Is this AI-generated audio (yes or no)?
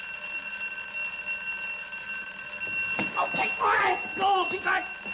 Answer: no